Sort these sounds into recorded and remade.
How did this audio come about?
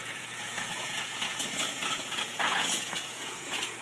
remade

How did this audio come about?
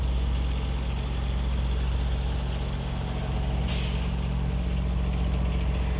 recorded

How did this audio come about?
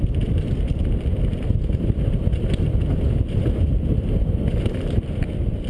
recorded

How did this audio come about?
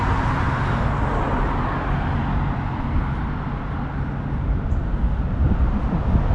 recorded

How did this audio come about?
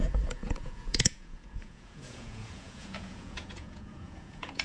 remade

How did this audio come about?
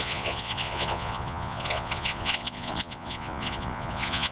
remade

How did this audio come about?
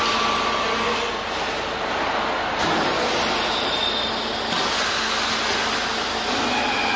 recorded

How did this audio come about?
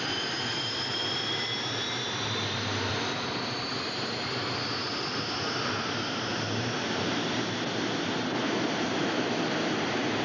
recorded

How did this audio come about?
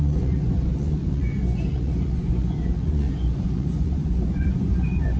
remade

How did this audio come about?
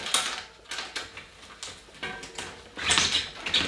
recorded